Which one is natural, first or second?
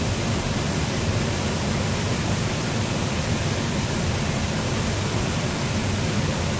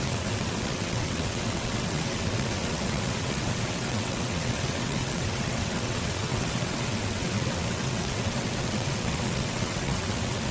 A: first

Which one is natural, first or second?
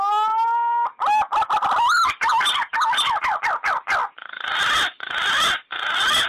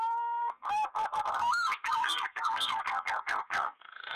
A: first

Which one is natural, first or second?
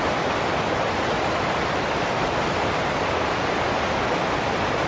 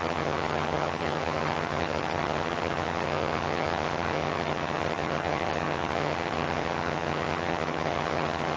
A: first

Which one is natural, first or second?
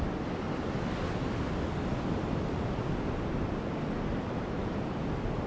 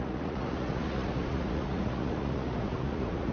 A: first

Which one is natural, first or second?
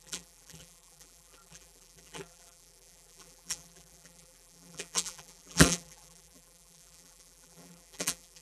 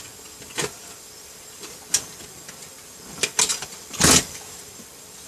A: second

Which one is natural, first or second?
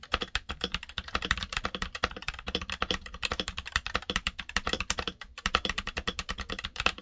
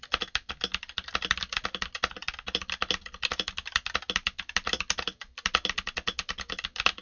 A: second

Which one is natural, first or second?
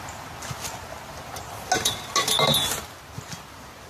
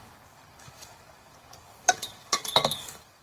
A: first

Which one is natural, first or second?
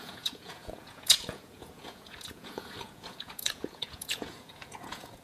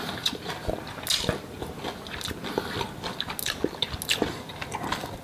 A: second